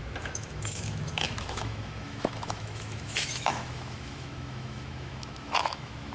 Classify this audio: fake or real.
fake